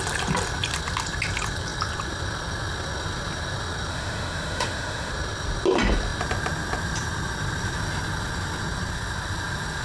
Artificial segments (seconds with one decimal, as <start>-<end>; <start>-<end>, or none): 3.9-5.1